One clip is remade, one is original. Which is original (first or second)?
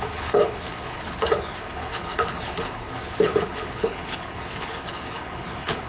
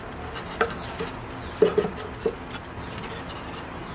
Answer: second